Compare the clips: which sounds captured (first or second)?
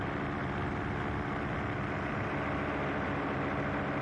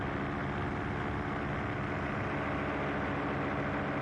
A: second